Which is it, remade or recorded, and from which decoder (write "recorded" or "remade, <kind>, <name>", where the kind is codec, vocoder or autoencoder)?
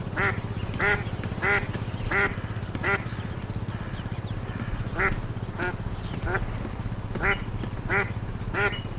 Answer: recorded